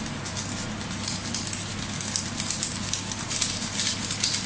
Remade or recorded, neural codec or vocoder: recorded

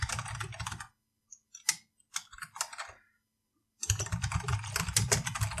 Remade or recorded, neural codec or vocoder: recorded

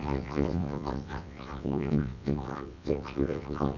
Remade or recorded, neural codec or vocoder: remade, vocoder, WaveNeXt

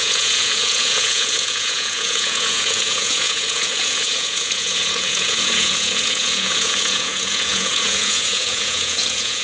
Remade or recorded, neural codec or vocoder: remade, vocoder, Vocos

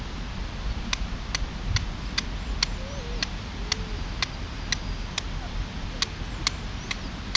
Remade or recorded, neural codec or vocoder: recorded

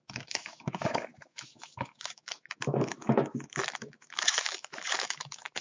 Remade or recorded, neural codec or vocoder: remade, autoencoder, DAC-VAE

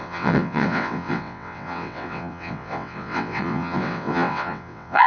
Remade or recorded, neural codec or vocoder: remade, vocoder, WaveNeXt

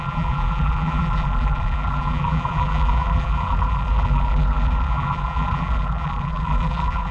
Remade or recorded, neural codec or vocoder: remade, vocoder, BigVGAN v2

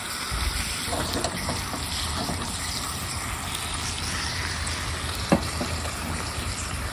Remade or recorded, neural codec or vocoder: recorded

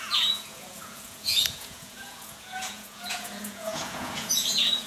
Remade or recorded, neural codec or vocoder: remade, vocoder, Vocos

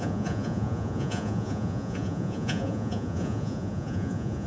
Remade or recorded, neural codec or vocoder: remade, vocoder, Vocos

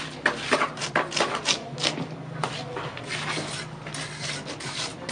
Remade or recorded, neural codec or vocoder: recorded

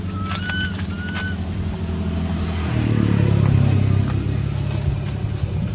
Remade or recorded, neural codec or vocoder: recorded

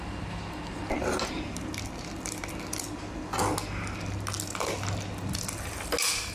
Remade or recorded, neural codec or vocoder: recorded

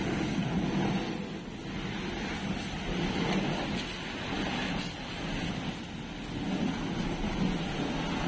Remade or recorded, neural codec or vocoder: recorded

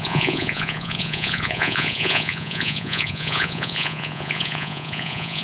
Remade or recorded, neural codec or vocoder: remade, vocoder, Vocos